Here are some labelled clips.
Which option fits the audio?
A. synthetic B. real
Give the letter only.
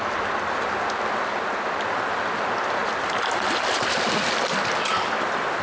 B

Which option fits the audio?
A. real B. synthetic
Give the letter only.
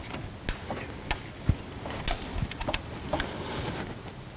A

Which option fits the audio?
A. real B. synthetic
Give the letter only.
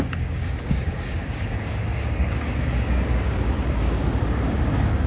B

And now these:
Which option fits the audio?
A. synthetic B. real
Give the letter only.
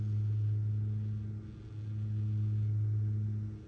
B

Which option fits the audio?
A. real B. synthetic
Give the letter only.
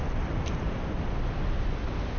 A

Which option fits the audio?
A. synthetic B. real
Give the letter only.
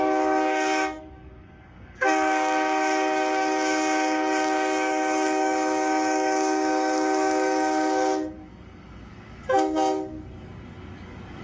A